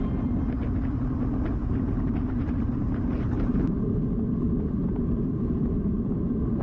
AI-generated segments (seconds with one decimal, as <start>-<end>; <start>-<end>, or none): 1.6-5.6